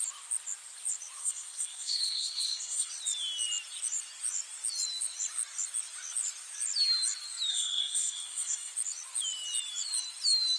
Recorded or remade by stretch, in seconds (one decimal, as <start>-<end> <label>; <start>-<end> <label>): 0.0-1.2 recorded; 1.2-2.9 remade; 2.9-7.5 recorded; 7.5-8.7 remade; 8.7-10.6 recorded